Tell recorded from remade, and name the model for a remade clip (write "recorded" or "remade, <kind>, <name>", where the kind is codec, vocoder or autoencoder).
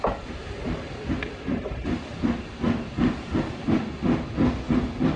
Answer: recorded